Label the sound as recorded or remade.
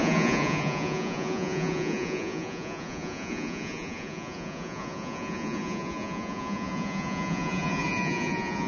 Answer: remade